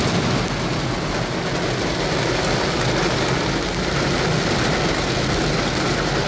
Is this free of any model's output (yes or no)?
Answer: yes